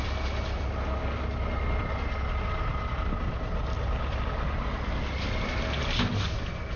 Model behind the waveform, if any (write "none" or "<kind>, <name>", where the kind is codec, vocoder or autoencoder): none